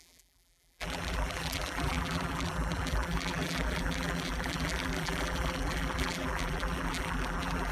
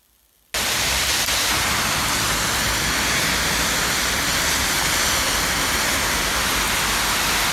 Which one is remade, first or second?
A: first